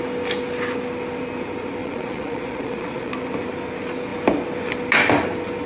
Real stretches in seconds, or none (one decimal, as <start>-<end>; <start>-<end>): 0.0-1.8; 3.1-5.7